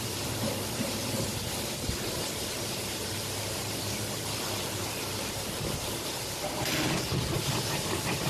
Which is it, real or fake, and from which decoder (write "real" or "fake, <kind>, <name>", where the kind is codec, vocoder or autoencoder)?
fake, vocoder, BigVGAN v2